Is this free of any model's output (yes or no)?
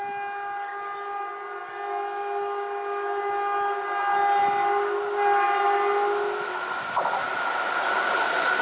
yes